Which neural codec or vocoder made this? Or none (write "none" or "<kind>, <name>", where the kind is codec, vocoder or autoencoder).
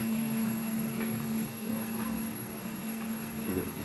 codec, SNAC